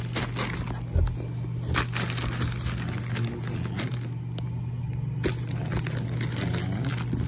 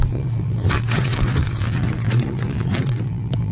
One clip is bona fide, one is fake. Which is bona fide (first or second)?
first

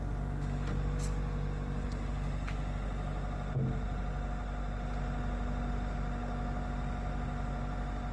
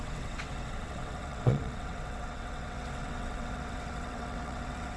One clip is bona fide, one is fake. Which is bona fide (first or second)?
first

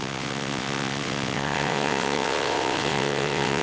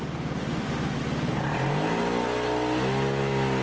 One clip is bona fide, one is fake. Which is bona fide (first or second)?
second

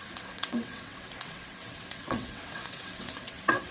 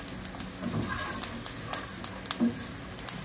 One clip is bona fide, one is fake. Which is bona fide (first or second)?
second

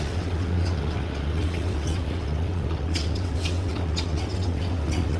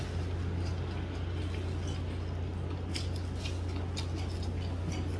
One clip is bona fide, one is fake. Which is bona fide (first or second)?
second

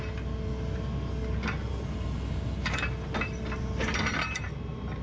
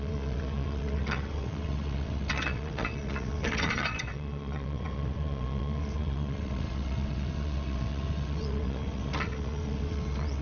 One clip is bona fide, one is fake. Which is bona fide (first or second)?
first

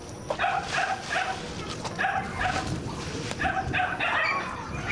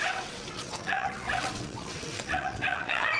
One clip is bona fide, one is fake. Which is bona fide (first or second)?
first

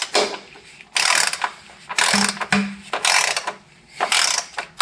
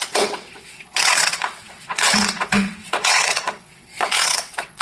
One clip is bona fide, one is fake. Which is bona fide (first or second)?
first